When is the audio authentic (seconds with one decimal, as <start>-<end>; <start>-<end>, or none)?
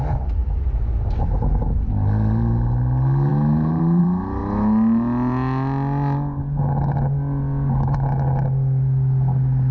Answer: 0.0-3.3; 4.0-9.7